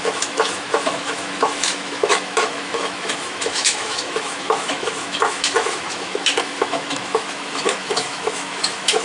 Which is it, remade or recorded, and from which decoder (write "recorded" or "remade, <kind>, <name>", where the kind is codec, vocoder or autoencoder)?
remade, autoencoder, DAC-VAE